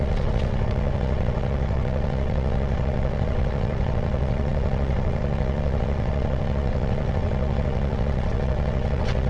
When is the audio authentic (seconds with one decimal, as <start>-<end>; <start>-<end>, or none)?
none